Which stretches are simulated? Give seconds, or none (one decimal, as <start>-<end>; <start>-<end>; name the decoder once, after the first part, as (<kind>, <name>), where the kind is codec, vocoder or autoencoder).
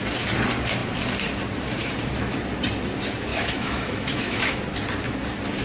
3.3-4.6 (autoencoder, DAC-VAE)